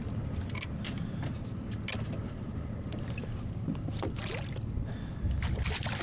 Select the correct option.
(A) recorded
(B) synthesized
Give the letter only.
A